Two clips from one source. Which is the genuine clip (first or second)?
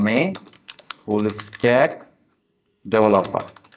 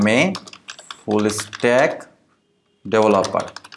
second